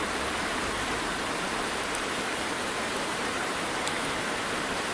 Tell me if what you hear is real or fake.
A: fake